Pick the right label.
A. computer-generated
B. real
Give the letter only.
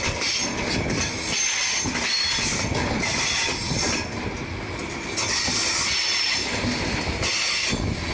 B